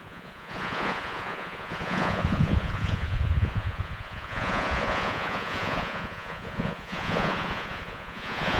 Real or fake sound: fake